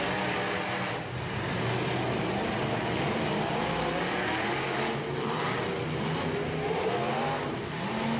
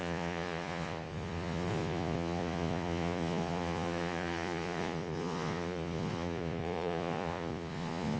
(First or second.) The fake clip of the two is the second